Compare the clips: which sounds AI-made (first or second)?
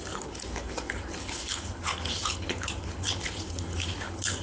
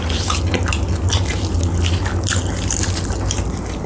first